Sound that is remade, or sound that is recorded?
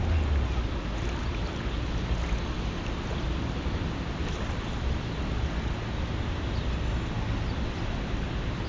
recorded